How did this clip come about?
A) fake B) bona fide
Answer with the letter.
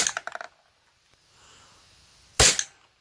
B